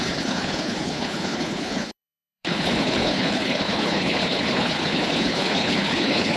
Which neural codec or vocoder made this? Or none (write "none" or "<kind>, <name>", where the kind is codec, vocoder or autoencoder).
codec, HILCodec